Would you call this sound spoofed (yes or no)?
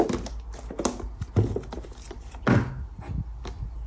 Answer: no